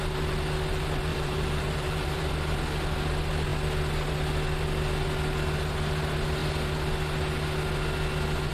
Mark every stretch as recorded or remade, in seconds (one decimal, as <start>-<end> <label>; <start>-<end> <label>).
0.0-1.1 recorded; 1.1-2.3 remade; 2.3-8.5 recorded